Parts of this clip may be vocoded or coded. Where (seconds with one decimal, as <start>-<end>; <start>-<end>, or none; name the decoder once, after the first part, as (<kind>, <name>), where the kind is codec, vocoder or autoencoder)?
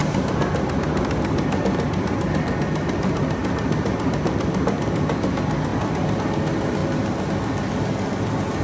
6.8-7.3 (vocoder, BigVGAN v2)